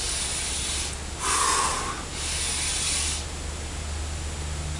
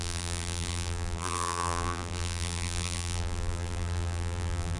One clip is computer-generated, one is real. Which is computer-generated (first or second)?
second